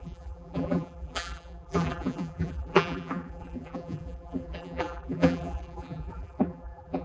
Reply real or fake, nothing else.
fake